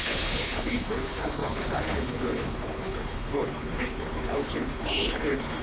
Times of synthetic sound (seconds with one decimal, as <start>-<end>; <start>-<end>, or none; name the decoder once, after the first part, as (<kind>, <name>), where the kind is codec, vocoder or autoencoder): 0.0-5.6 (codec, HILCodec)